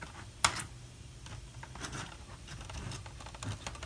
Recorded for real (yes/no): yes